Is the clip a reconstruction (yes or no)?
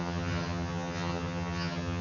yes